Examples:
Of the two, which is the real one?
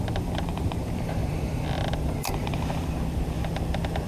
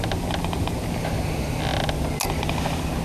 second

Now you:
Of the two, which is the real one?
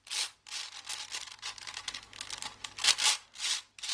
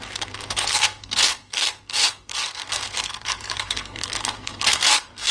first